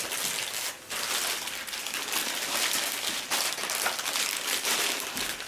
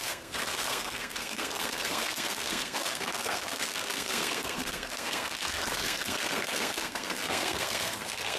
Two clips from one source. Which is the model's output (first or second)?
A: second